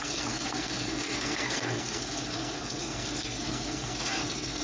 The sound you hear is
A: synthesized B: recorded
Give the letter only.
A